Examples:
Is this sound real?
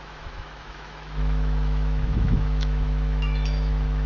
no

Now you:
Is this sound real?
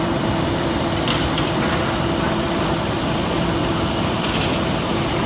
no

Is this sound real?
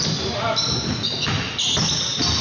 yes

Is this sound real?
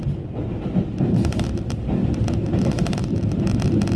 yes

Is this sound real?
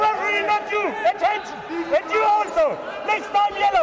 yes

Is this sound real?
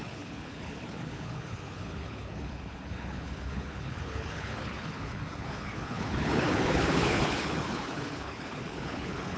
no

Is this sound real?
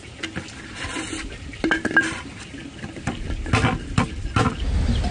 yes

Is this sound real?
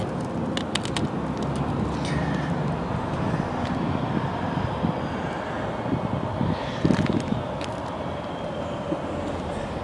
yes